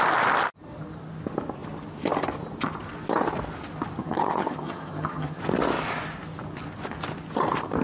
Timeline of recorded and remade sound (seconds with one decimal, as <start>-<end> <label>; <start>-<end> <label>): 0.0-4.0 recorded; 4.0-5.4 remade; 5.4-7.8 recorded